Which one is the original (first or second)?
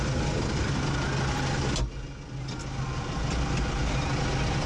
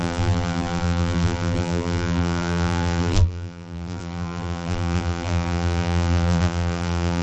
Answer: first